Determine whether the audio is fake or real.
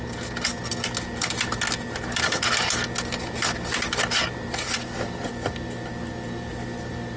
real